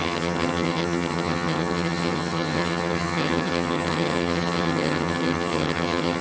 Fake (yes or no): yes